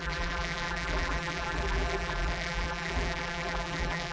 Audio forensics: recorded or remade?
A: remade